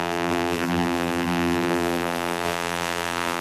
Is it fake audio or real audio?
fake